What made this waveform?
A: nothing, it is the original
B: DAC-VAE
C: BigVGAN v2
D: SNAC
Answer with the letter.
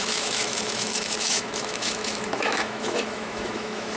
B